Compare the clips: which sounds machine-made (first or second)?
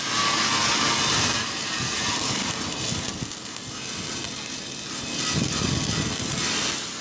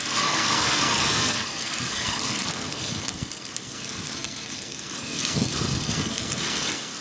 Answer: second